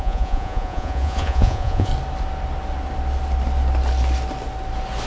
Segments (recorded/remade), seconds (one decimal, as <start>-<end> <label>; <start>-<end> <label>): 0.0-1.9 remade; 1.9-5.1 recorded